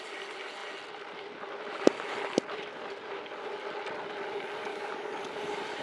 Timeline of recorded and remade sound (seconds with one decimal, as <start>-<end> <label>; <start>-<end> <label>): 0.0-4.7 recorded; 4.7-5.2 remade; 5.2-5.8 recorded